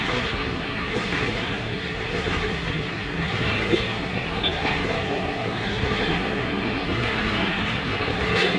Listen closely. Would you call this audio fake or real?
fake